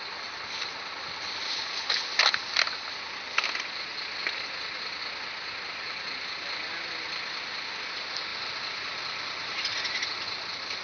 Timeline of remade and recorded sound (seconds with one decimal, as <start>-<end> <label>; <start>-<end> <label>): 0.0-10.8 recorded

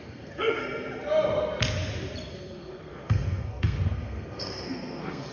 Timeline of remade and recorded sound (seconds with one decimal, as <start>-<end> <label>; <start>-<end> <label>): 0.0-0.6 remade; 0.6-2.3 recorded; 2.3-5.3 remade

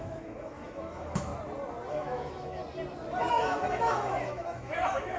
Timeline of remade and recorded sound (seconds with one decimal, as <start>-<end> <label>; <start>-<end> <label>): 0.0-1.3 remade; 1.3-1.9 recorded; 1.9-2.6 remade; 2.6-3.3 recorded; 3.3-5.2 remade

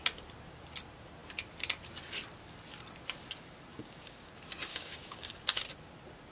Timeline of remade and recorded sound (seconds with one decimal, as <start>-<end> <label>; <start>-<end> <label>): 0.0-3.7 recorded; 3.7-4.3 remade; 4.3-4.7 recorded; 4.7-5.3 remade; 5.3-6.3 recorded

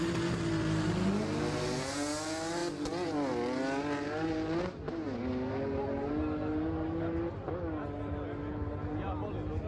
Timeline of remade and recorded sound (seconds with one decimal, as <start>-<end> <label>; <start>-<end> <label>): 0.0-9.7 recorded

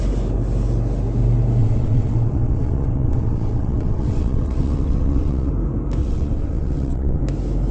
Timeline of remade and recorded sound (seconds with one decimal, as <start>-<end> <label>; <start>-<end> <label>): 0.0-1.6 recorded; 1.6-5.5 remade; 5.5-6.0 recorded; 6.0-7.2 remade; 7.2-7.7 recorded

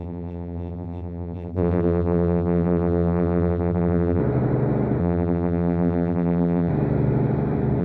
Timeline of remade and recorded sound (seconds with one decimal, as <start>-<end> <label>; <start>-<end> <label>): 0.0-4.2 remade; 4.2-5.0 recorded; 5.0-6.7 remade; 6.7-7.8 recorded

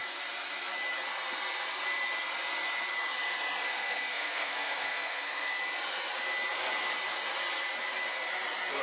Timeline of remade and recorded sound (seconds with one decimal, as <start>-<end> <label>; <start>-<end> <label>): 0.0-3.7 recorded; 3.7-5.5 remade; 5.5-8.8 recorded